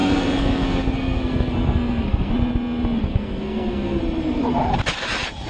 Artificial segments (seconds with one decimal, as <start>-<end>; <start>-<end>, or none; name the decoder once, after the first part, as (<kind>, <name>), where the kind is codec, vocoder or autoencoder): 0.0-2.3 (codec, SNAC); 3.1-4.0